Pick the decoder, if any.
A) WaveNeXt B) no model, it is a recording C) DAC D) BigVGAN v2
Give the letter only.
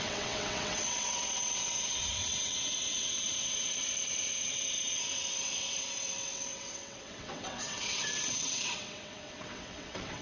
A